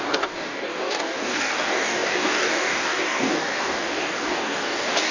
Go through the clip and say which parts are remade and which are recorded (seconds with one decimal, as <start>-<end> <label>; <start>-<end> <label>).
0.0-5.1 remade